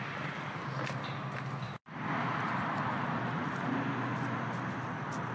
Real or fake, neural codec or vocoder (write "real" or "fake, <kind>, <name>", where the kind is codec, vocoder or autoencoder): fake, vocoder, BigVGAN v2